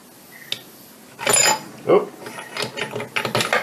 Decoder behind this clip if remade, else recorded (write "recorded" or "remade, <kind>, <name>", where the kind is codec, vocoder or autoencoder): recorded